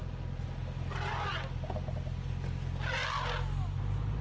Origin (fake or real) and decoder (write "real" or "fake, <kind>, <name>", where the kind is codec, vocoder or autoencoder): real